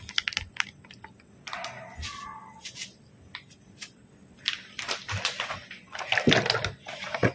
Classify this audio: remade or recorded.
recorded